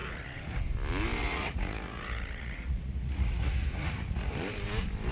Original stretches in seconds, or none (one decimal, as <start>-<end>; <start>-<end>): 0.6-1.2; 4.3-5.1